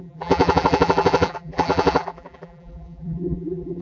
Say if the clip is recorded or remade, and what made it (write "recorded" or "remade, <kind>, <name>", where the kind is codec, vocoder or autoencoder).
remade, vocoder, BigVGAN v2